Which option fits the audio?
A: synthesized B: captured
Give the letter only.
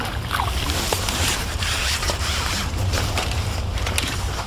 A